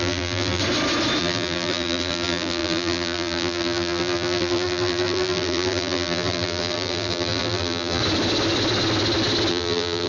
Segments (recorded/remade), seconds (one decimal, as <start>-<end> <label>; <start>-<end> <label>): 0.0-0.6 remade; 0.6-1.2 recorded; 1.2-8.0 remade; 8.0-9.5 recorded; 9.5-10.1 remade